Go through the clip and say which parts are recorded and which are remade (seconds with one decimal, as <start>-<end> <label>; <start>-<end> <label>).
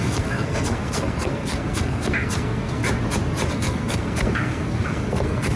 0.0-2.8 remade; 2.8-3.5 recorded; 3.5-5.6 remade